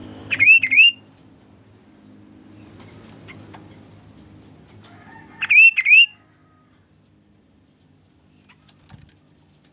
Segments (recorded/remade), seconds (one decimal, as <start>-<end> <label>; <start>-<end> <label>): 0.0-0.6 remade; 0.6-9.7 recorded